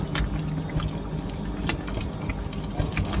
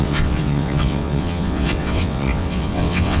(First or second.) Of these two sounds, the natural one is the first